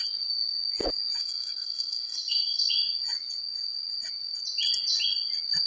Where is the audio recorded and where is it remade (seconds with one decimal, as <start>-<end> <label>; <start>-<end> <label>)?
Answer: 0.0-1.2 recorded; 1.2-2.7 remade; 2.7-5.7 recorded